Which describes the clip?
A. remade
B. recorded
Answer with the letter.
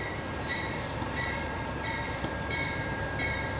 A